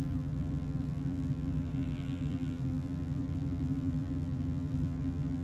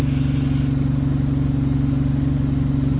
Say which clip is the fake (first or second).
first